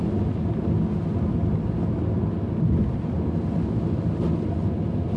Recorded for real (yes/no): yes